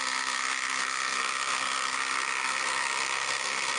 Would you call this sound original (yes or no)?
no